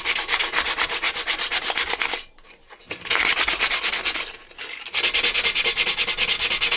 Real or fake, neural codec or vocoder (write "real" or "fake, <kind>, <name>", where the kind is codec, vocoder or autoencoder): real